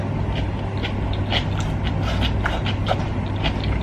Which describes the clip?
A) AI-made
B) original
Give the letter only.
B